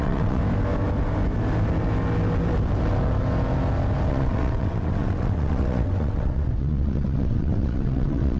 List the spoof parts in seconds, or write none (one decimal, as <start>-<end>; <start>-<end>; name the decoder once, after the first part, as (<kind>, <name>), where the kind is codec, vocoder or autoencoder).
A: 0.0-0.4 (vocoder, WaveNeXt); 4.1-8.4